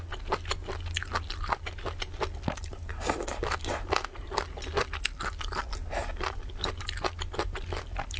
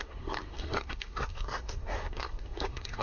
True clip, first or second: first